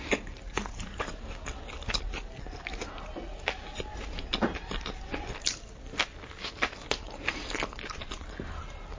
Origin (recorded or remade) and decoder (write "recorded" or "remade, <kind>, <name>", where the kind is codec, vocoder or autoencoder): recorded